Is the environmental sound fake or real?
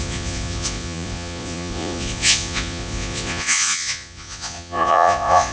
fake